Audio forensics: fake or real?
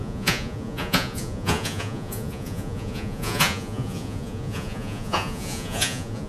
fake